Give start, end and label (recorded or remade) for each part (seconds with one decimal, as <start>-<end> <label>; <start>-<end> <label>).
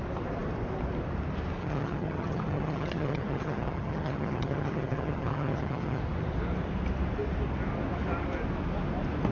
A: 0.0-1.6 recorded; 1.6-6.0 remade; 6.0-9.3 recorded